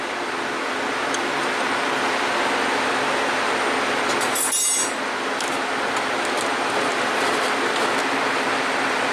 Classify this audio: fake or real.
real